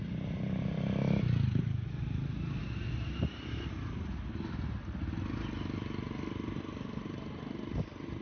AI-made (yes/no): no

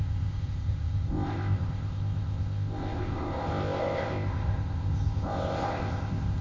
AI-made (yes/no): yes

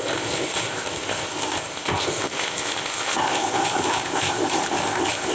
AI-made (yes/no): yes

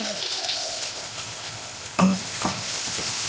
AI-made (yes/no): yes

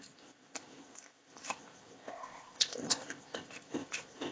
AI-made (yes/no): yes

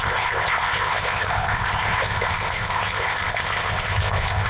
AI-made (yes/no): yes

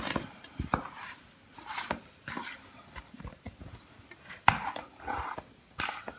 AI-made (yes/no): no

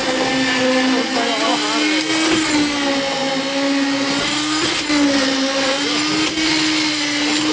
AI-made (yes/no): no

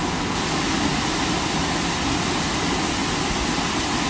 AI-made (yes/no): no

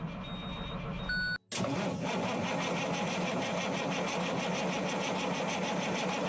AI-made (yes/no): no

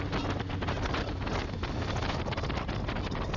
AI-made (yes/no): no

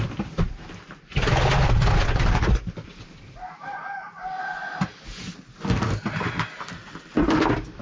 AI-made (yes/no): no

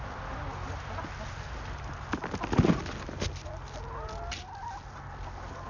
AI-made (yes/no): no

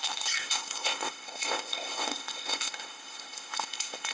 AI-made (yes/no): yes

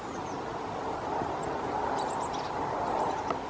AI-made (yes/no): no